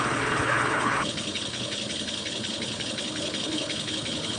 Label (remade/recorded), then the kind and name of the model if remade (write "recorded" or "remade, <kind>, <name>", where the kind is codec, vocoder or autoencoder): remade, codec, HILCodec